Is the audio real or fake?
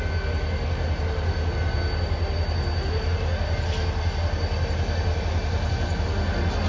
real